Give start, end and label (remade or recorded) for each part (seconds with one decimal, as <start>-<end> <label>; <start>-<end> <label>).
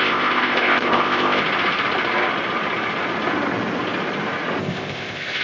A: 0.0-1.4 remade; 1.4-4.6 recorded; 4.6-5.4 remade